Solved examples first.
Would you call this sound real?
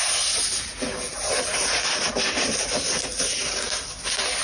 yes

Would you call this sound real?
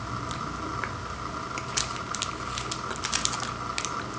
yes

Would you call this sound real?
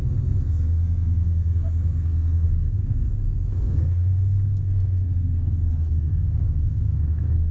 no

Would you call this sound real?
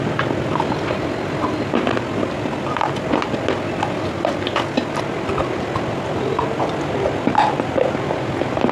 yes